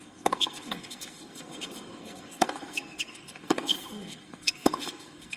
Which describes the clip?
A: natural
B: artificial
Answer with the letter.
B